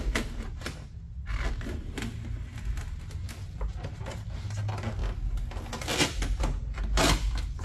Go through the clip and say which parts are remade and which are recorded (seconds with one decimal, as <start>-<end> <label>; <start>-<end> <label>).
0.0-7.6 recorded